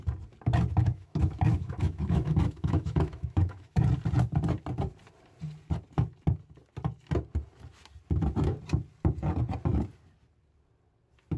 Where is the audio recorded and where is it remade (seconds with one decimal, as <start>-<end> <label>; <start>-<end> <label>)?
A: 0.0-0.8 recorded; 0.8-3.8 remade; 3.8-11.4 recorded